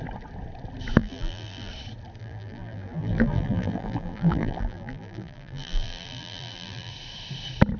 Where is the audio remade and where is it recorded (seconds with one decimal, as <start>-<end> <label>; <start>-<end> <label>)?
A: 0.0-1.0 recorded; 1.0-1.7 remade; 1.7-2.2 recorded; 2.2-6.9 remade; 6.9-7.8 recorded